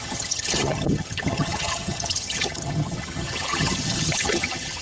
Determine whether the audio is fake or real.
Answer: fake